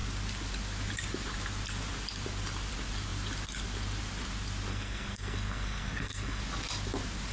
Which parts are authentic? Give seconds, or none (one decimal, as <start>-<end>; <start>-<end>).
0.0-4.7; 6.4-7.3

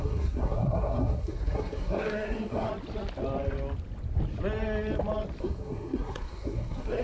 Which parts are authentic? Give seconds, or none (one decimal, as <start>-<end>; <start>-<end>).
2.7-5.4